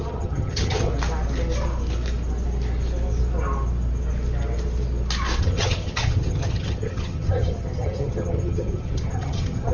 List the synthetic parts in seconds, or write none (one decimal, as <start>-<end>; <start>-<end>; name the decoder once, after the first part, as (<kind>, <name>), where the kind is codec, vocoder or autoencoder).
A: 0.0-0.9 (vocoder, HiFi-GAN); 5.4-9.7